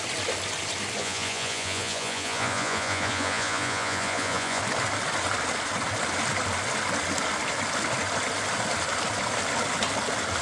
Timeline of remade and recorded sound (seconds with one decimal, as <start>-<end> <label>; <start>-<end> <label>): 0.0-1.0 recorded; 1.0-4.6 remade; 4.6-10.4 recorded